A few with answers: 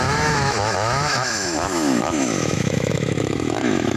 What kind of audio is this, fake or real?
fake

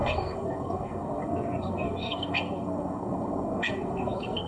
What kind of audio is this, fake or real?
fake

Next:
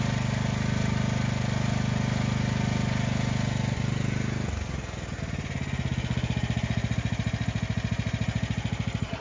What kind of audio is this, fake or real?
real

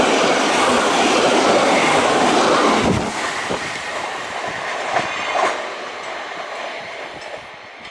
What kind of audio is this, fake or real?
real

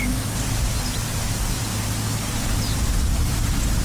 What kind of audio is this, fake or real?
real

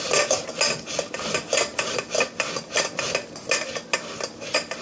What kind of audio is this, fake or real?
real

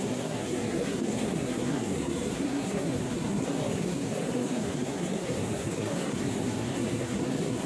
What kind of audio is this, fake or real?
fake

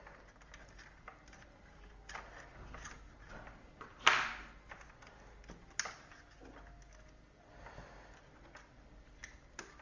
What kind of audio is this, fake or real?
real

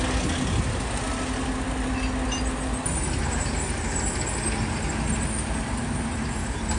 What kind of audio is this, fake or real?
real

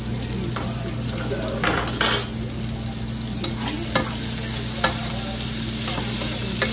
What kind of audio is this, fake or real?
real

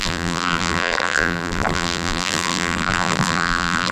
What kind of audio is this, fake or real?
fake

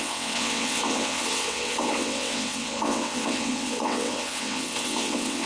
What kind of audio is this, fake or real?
fake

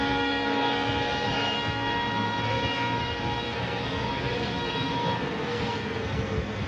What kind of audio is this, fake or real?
fake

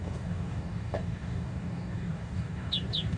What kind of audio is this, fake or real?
fake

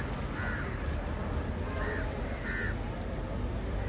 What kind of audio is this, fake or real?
real